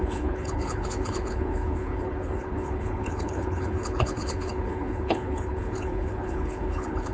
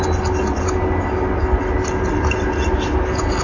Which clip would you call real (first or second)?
second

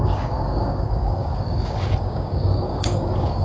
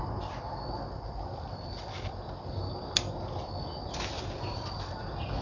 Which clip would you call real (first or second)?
second